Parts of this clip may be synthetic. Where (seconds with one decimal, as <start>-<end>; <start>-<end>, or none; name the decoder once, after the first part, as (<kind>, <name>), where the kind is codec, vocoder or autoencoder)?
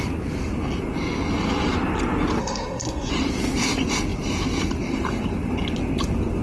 2.4-3.1 (codec, SNAC)